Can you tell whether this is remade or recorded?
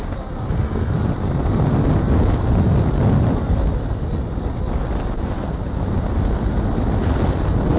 recorded